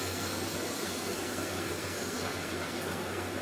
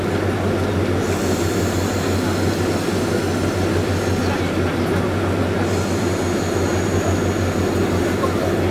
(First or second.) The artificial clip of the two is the first